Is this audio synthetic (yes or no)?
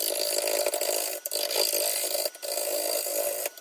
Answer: no